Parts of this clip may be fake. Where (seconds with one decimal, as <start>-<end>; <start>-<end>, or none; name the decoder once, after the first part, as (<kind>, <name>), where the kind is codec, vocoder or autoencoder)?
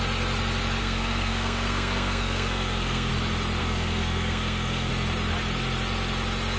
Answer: 0.8-3.1 (codec, SNAC); 3.6-4.9